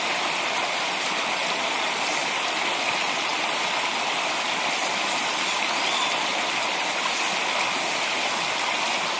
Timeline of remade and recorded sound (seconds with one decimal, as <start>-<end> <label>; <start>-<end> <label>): 0.0-9.2 recorded